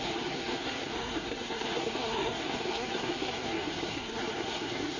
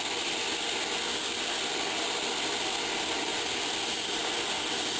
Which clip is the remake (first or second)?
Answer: first